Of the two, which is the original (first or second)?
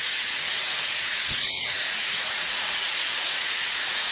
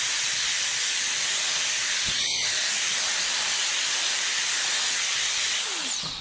second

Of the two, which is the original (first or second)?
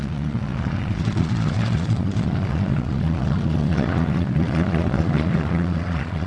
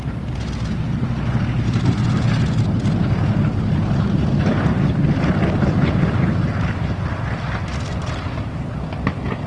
second